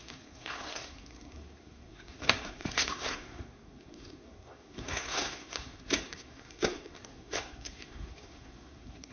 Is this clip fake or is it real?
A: fake